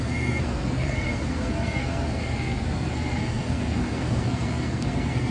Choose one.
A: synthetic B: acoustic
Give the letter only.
A